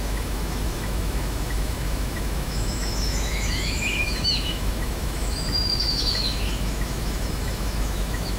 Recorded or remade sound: remade